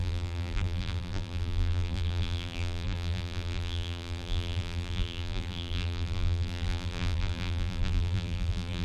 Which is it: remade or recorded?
remade